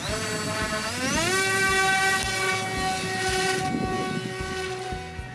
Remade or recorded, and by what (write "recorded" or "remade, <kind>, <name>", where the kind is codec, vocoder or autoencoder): recorded